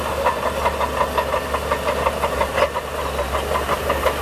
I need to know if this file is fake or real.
real